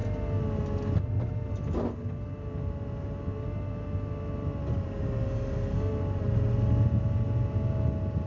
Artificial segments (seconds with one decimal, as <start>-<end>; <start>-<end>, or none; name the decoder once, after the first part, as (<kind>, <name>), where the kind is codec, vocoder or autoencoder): none

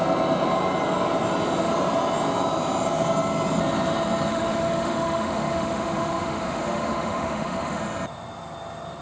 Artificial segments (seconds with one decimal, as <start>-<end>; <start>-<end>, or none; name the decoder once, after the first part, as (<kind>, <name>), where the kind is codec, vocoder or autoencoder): 4.3-7.8 (autoencoder, DAC-VAE)

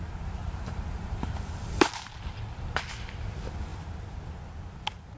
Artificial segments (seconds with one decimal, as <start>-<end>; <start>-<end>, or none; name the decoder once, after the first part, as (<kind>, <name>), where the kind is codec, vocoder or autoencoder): 0.4-1.9 (vocoder, BigVGAN v2)

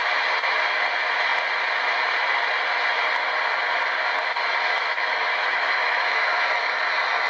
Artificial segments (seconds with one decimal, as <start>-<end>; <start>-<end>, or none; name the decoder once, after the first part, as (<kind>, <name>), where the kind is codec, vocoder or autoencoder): 4.8-6.4 (autoencoder, DAC-VAE)

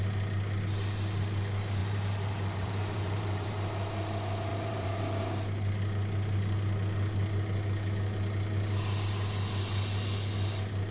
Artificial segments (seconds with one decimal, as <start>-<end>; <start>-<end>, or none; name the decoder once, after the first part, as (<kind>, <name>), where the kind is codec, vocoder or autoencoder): 1.8-3.5 (vocoder, BigVGAN v2); 4.5-5.0